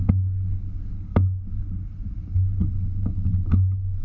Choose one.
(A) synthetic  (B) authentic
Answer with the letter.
B